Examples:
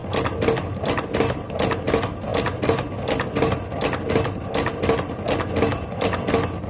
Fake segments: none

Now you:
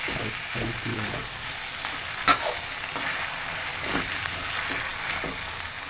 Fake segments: 0.9-1.5 (codec, DAC); 2.2-2.7; 3.7-4.5; 4.9-5.9

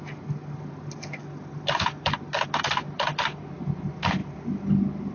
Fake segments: none

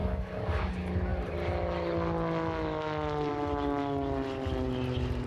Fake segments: 0.0-0.7 (codec, DAC)

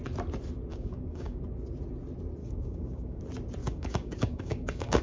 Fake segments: 0.7-1.4 (codec, DAC); 2.4-3.2; 3.6-5.0